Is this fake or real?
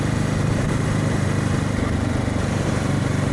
fake